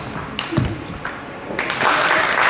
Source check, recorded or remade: recorded